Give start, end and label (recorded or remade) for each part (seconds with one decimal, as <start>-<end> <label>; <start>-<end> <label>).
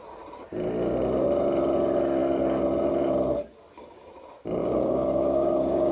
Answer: 0.0-4.6 recorded; 4.6-5.9 remade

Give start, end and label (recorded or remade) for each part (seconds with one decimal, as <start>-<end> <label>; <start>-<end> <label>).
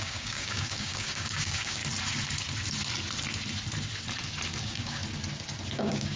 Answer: 0.0-1.8 remade; 1.8-4.6 recorded; 4.6-5.0 remade; 5.0-5.7 recorded; 5.7-6.2 remade